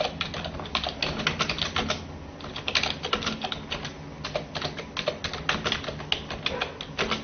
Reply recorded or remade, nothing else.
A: recorded